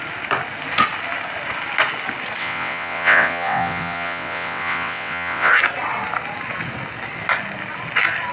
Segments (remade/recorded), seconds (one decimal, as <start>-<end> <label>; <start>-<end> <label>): 0.0-2.4 recorded; 2.4-5.5 remade; 5.5-8.3 recorded